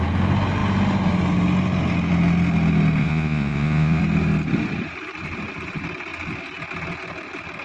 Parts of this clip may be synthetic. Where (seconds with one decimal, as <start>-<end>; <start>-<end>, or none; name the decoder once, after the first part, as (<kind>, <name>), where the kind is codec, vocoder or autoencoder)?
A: 3.0-4.0 (vocoder, Vocos)